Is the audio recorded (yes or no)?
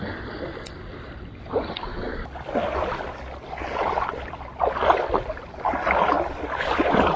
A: no